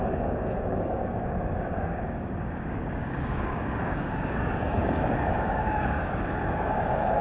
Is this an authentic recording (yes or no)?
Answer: no